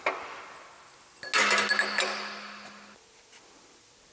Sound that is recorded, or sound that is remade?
recorded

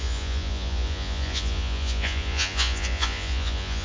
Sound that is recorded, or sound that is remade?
remade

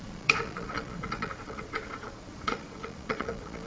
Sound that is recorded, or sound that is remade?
remade